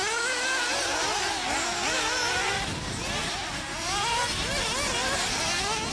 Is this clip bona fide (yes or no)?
yes